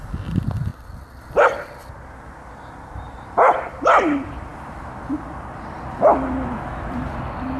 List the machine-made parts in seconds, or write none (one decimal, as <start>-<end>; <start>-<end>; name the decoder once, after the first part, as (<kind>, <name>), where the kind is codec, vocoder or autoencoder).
0.0-0.7 (vocoder, BigVGAN v2); 1.2-7.6